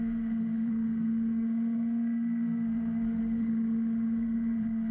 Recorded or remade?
remade